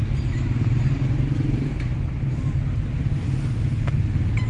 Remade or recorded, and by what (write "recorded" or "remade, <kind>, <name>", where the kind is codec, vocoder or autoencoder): recorded